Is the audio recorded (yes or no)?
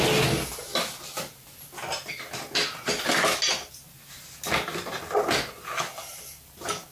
yes